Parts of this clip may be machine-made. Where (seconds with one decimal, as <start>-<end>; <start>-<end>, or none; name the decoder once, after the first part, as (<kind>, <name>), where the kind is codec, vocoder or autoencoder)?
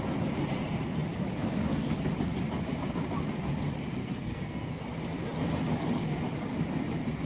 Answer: 4.0-4.8 (codec, SNAC)